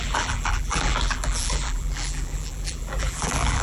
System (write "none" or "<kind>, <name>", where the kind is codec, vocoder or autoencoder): vocoder, BigVGAN v2